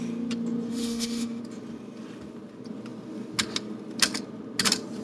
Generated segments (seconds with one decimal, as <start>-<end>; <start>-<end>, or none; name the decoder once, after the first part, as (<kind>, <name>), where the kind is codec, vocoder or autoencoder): 0.7-1.4 (autoencoder, DAC-VAE)